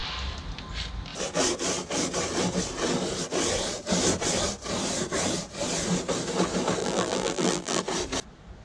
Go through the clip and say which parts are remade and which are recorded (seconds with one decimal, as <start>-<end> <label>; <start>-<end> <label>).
0.0-6.8 recorded; 6.8-7.8 remade; 7.8-8.6 recorded